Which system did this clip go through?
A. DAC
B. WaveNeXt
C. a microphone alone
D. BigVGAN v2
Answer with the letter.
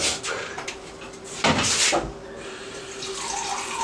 C